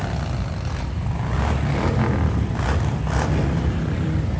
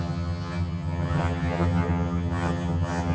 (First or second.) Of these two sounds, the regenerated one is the second